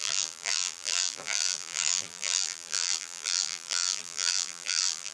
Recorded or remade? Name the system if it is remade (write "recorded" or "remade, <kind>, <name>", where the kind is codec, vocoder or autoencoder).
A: remade, vocoder, BigVGAN v2